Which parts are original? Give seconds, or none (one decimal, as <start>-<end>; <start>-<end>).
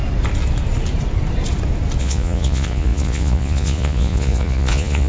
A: 0.0-2.0